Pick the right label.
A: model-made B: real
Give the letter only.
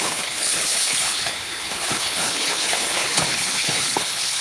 A